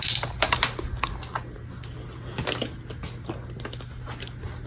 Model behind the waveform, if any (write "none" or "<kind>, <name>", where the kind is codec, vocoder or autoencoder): none